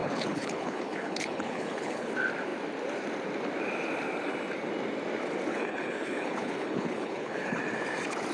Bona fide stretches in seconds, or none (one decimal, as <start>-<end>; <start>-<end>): 2.1-5.5; 7.6-8.3